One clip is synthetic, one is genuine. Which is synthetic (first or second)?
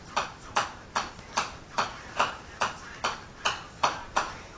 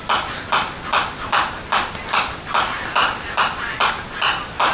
first